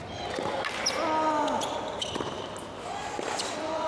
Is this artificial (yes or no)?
no